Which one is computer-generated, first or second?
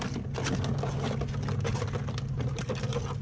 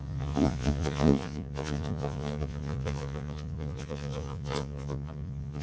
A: second